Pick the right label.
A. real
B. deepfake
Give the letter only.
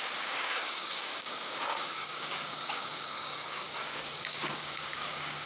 B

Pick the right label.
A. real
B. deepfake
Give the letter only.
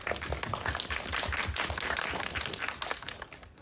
A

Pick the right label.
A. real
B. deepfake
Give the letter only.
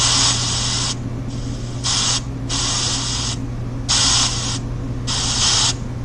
A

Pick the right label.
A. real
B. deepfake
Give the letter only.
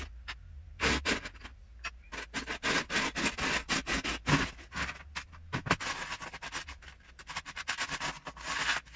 A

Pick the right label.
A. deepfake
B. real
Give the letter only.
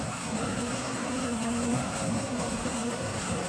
A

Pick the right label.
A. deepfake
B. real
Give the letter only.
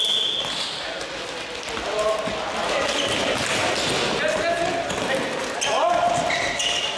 B